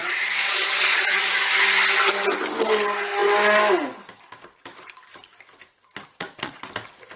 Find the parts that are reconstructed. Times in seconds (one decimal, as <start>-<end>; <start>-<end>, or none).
0.0-1.3; 6.1-6.6